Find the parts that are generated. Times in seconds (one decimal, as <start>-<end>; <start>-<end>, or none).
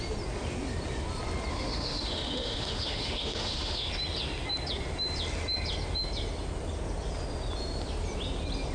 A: 1.5-3.9